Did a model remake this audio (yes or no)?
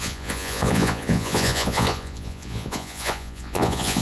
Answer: yes